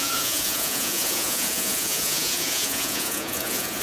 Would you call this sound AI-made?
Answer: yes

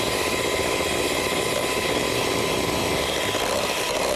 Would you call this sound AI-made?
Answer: no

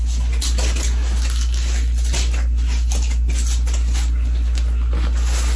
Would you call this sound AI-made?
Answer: no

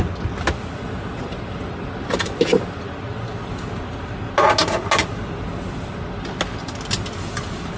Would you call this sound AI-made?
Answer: no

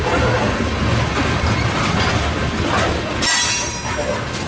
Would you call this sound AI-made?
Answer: no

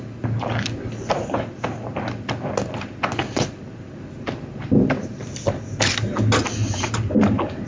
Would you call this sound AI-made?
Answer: no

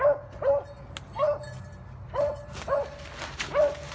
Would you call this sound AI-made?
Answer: no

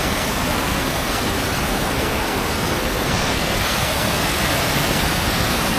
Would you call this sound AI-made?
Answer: yes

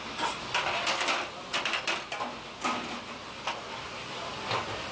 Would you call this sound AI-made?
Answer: no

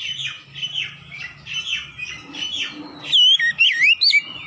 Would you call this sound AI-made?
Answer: no